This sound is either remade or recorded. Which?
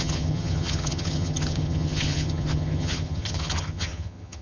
remade